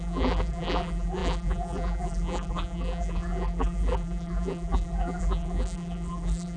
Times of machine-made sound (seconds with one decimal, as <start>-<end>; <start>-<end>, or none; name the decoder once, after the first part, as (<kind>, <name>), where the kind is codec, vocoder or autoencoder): 0.0-6.6 (vocoder, BigVGAN v2)